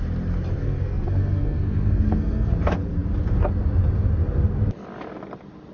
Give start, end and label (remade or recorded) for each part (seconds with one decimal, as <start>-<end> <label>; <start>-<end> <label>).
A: 0.0-0.6 recorded; 0.6-2.5 remade; 2.5-5.7 recorded